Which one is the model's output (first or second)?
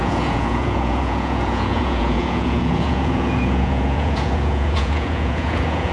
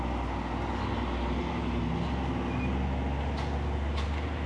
first